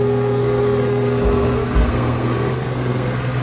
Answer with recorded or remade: remade